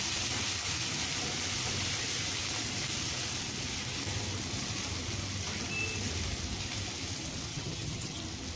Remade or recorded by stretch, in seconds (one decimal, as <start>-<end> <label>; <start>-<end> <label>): 0.0-7.5 recorded; 7.5-8.2 remade; 8.2-8.6 recorded